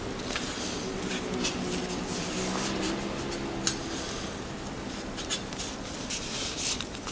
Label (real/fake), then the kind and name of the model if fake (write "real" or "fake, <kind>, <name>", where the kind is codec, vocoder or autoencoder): real